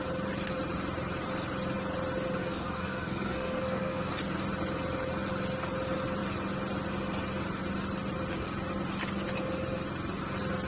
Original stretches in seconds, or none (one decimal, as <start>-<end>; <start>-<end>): 0.0-2.4; 4.1-10.7